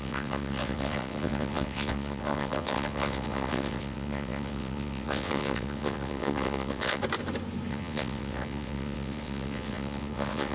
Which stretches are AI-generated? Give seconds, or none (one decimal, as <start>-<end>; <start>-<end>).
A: 0.0-7.0; 7.7-10.5